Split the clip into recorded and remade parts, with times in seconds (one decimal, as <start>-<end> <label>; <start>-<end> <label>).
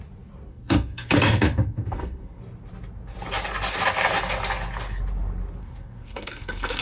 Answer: 0.0-0.5 recorded; 0.5-2.4 remade; 2.4-5.6 recorded; 5.6-6.8 remade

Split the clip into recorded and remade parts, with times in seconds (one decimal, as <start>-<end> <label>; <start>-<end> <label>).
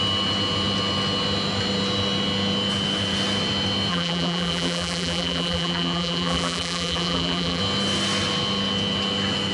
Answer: 0.0-3.9 recorded; 3.9-7.6 remade; 7.6-9.5 recorded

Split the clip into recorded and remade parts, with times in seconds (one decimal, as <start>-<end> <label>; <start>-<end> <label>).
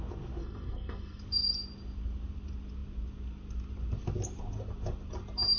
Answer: 0.0-0.4 recorded; 0.4-1.2 remade; 1.2-5.6 recorded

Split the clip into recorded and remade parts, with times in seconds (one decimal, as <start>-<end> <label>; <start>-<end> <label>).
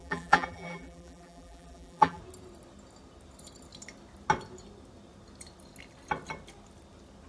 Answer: 0.0-2.2 remade; 2.2-7.3 recorded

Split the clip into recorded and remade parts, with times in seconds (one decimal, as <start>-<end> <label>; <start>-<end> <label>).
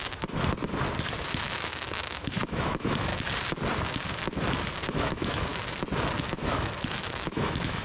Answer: 0.0-1.3 recorded; 1.3-3.1 remade; 3.1-4.9 recorded; 4.9-5.5 remade; 5.5-6.2 recorded; 6.2-7.8 remade